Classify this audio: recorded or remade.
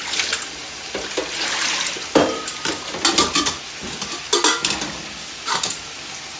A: recorded